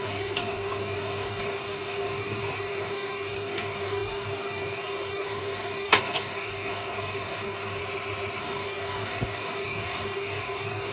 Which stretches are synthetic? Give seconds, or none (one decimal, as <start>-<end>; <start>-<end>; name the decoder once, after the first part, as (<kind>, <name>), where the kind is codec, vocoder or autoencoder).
0.0-7.8 (codec, DAC); 8.4-10.9